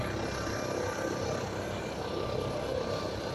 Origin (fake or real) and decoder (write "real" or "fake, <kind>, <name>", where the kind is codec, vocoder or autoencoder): real